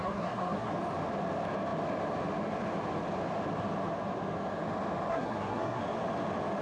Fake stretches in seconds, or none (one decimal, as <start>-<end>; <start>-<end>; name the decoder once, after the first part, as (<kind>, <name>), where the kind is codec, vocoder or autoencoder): 0.0-0.7 (codec, SNAC); 5.1-5.8